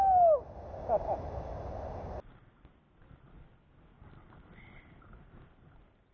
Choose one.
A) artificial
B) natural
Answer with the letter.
B